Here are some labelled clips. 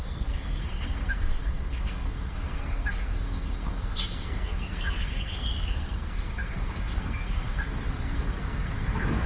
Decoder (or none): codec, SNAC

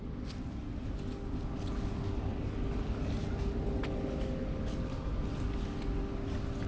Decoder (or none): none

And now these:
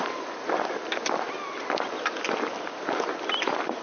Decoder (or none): none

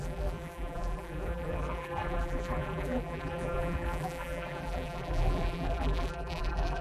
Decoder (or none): vocoder, BigVGAN v2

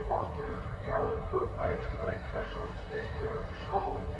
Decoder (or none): codec, SNAC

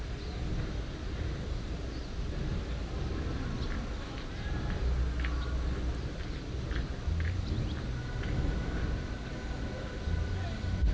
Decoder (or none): none